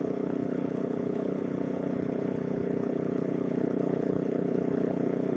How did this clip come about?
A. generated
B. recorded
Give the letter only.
A